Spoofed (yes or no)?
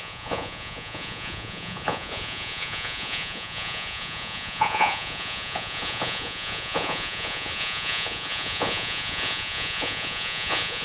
yes